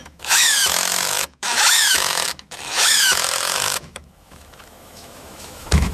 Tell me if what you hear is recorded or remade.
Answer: remade